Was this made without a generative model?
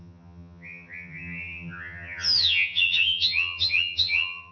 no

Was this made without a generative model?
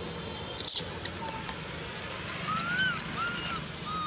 yes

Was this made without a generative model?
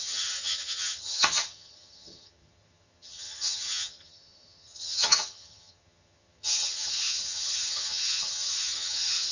no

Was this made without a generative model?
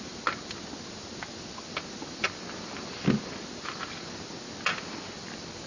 yes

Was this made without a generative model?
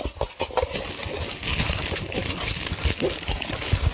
yes